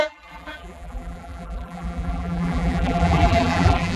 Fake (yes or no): yes